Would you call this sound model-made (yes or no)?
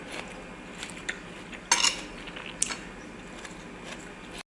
no